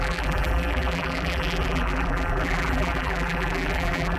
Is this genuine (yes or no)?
no